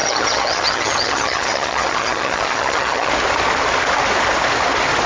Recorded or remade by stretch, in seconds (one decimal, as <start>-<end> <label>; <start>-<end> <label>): 0.0-3.1 remade; 3.1-5.1 recorded